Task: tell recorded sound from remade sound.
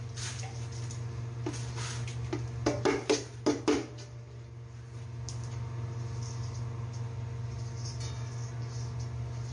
recorded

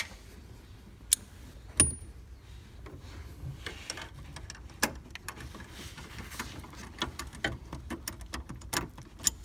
recorded